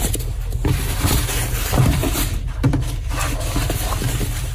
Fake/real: fake